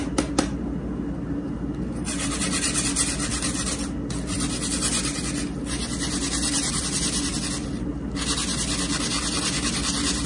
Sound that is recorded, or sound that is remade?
recorded